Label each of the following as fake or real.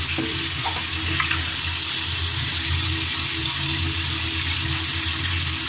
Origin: real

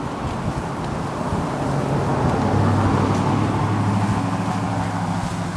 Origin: real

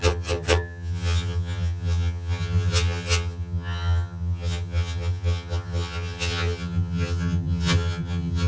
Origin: fake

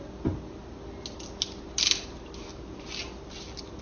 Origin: real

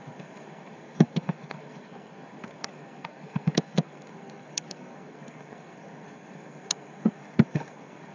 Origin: fake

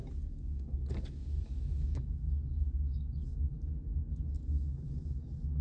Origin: fake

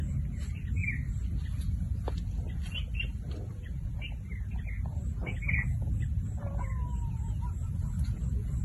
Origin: real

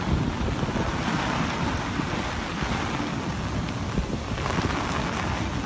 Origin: real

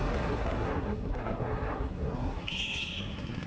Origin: fake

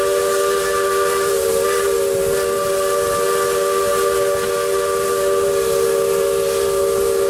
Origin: real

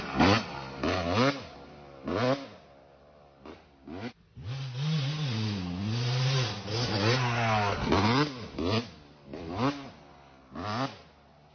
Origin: real